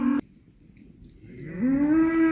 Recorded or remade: recorded